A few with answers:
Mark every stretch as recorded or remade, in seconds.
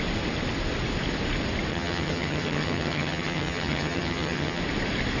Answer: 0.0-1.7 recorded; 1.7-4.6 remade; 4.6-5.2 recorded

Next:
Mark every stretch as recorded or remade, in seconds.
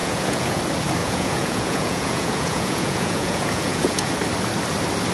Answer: 0.0-0.6 remade; 0.6-1.0 recorded; 1.0-4.1 remade; 4.1-5.1 recorded